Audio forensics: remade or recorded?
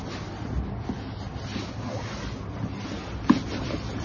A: recorded